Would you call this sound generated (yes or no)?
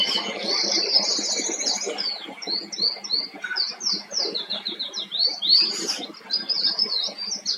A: no